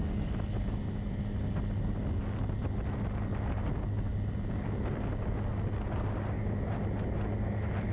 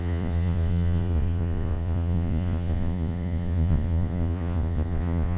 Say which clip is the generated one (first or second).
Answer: second